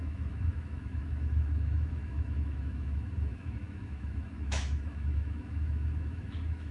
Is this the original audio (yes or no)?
no